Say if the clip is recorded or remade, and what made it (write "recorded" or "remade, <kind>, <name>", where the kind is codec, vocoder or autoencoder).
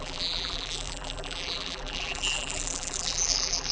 remade, vocoder, BigVGAN v2